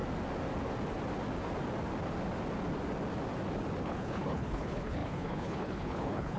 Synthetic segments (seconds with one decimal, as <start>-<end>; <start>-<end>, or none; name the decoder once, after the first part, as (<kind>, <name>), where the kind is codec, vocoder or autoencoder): 3.8-6.4 (codec, HILCodec)